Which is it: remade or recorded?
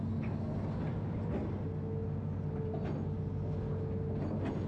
recorded